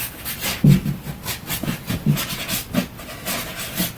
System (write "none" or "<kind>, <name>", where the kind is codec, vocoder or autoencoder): none